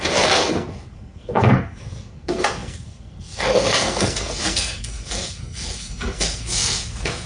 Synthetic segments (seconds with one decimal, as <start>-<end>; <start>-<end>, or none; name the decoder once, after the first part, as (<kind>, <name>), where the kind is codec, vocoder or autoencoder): 0.0-7.3 (codec, SNAC)

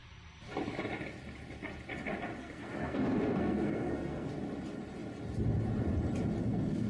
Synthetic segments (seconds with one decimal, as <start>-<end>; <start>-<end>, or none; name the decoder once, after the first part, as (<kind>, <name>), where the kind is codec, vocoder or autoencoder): 2.4-4.3 (codec, SNAC); 6.4-6.9

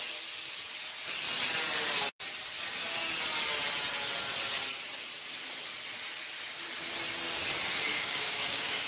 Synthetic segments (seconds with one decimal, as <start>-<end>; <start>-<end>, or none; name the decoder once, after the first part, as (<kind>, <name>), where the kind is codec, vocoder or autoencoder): 7.9-8.9 (codec, DAC)

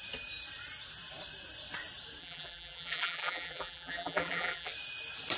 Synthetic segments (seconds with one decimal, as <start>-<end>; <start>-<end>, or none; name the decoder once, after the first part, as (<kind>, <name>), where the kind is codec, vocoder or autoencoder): 2.2-4.7 (vocoder, BigVGAN v2)